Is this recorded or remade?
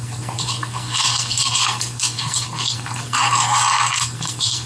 remade